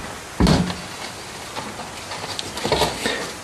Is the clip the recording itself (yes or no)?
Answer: yes